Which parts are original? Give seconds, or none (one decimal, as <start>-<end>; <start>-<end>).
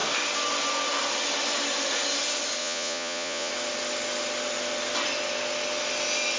0.0-2.6; 3.5-6.4